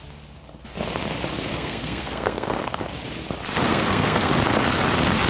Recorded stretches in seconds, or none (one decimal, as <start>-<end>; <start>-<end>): 0.0-1.5; 2.8-3.7; 4.3-5.3